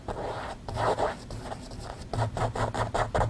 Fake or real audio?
real